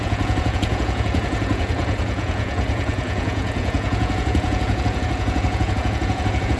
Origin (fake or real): fake